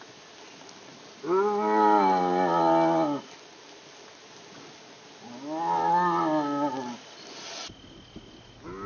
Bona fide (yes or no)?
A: yes